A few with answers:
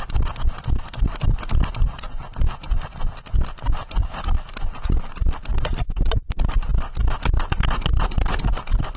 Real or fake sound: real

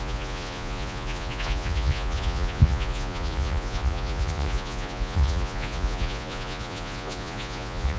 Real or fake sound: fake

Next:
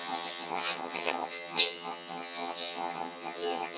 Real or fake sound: fake